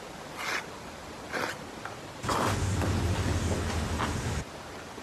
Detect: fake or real real